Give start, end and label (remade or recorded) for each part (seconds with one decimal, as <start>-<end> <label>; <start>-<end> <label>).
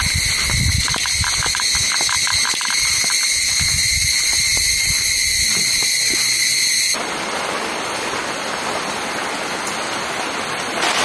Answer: 0.0-11.0 recorded